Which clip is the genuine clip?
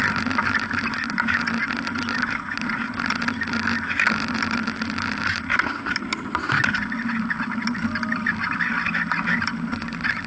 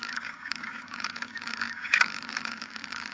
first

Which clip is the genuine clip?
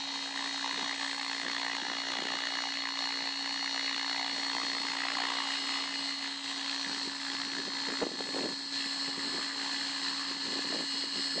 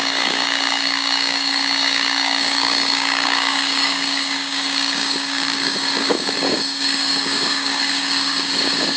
first